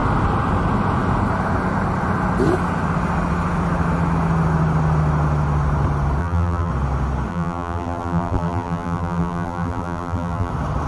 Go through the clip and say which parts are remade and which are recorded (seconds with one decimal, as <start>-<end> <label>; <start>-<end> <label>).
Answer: 0.0-6.2 recorded; 6.2-6.7 remade; 6.7-7.3 recorded; 7.3-10.5 remade; 10.5-10.9 recorded